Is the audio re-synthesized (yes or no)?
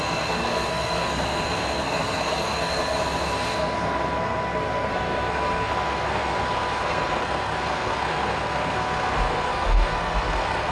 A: yes